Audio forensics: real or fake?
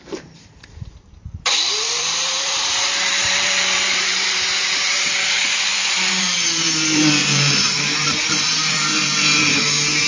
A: fake